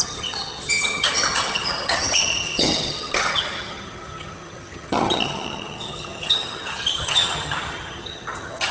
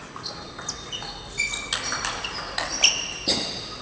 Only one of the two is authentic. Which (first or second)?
second